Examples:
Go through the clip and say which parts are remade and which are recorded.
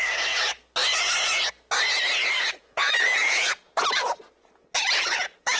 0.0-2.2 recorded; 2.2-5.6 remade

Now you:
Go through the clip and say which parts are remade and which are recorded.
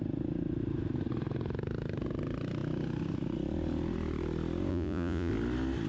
0.0-4.7 recorded; 4.7-5.3 remade; 5.3-5.9 recorded